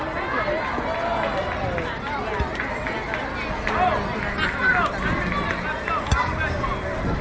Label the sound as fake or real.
real